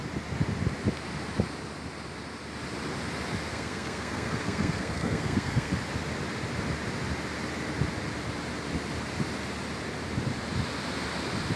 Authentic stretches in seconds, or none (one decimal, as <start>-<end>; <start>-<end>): 0.0-3.5; 5.7-11.6